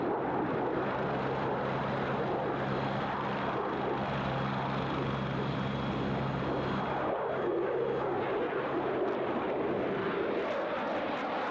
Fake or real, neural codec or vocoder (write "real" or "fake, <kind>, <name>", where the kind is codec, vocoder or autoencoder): real